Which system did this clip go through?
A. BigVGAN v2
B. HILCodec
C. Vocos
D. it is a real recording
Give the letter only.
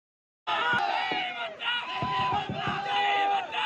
D